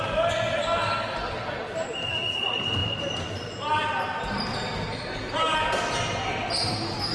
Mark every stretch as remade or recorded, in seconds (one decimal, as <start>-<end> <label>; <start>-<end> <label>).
0.0-7.1 recorded